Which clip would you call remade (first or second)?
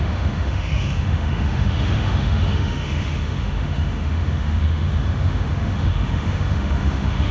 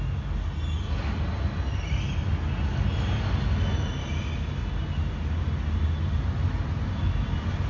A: first